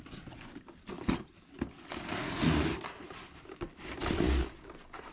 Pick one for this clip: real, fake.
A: fake